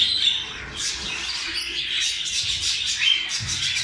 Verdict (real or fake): real